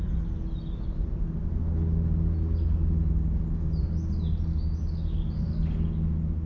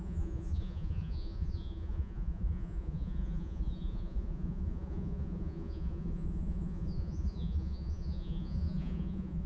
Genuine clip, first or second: first